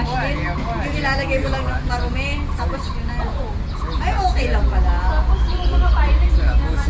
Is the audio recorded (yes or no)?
yes